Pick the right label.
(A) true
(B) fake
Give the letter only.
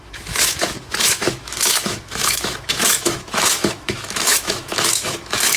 B